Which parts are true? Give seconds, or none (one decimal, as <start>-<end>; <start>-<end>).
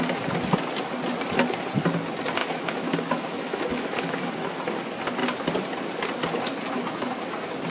0.0-2.4; 4.3-7.7